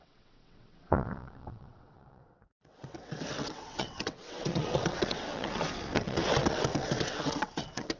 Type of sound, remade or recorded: remade